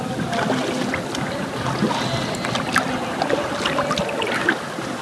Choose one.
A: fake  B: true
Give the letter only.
B